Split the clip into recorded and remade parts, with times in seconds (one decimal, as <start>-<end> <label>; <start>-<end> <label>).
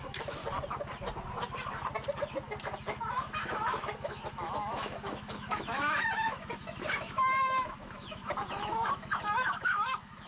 0.0-0.4 remade; 0.4-3.1 recorded; 3.1-10.3 remade